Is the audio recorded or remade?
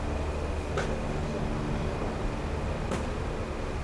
recorded